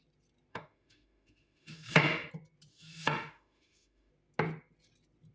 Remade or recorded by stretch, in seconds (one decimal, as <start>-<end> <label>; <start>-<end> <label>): 0.0-0.5 recorded; 0.5-2.3 remade; 2.3-2.7 recorded; 2.7-4.1 remade; 4.1-5.3 recorded